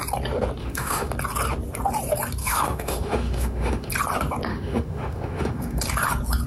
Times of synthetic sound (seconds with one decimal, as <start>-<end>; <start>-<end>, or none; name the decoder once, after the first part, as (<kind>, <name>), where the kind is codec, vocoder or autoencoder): 0.6-1.1 (autoencoder, DAC-VAE); 2.4-3.9; 4.5-5.8